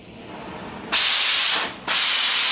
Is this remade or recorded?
recorded